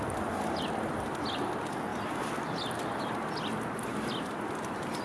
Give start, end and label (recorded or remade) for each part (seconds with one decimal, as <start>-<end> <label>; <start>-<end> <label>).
0.0-5.0 recorded